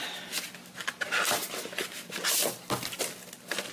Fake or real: real